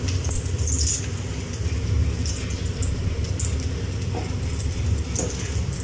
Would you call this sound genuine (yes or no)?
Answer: yes